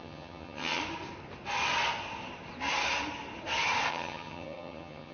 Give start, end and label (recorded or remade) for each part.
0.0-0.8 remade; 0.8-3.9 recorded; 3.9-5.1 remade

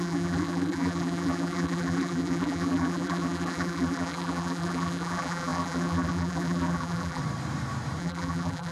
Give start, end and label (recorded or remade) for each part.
0.0-7.2 remade; 7.2-8.0 recorded; 8.0-8.7 remade

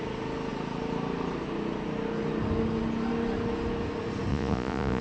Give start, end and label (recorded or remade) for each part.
0.0-4.3 recorded; 4.3-5.0 remade

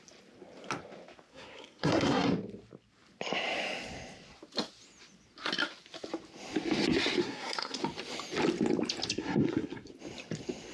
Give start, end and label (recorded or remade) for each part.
0.0-1.3 recorded; 1.3-2.3 remade; 2.3-7.2 recorded; 7.2-7.8 remade; 7.8-9.1 recorded; 9.1-9.9 remade; 9.9-10.7 recorded